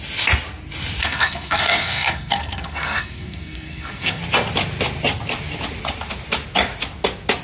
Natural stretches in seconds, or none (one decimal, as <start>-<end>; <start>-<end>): 0.0-1.0; 4.2-7.4